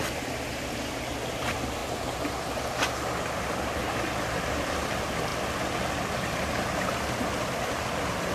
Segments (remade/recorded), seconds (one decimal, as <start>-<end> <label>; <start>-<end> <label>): 0.0-1.8 recorded; 1.8-2.6 remade; 2.6-5.3 recorded; 5.3-7.8 remade; 7.8-8.3 recorded